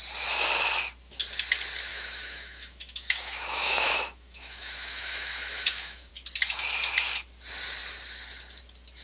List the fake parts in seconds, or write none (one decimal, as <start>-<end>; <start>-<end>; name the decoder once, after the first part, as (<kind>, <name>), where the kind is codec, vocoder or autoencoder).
1.9-6.1 (autoencoder, DAC-VAE)